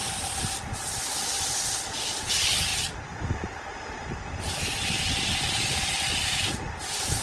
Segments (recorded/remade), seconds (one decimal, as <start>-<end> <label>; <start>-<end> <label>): 0.0-7.2 recorded